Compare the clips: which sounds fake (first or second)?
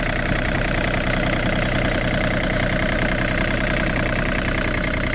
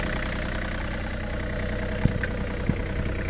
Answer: first